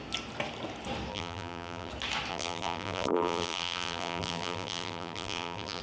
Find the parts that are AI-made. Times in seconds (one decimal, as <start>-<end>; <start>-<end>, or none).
1.1-1.9; 2.3-5.8